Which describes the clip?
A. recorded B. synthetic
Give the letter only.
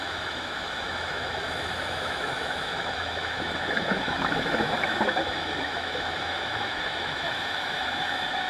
B